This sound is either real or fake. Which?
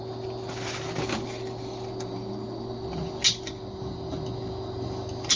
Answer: real